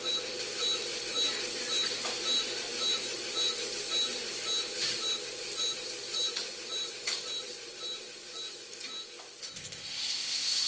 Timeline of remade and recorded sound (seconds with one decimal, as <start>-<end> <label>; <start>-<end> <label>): 0.0-9.4 recorded; 9.4-10.7 remade